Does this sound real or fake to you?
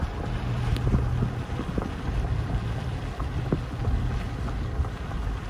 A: real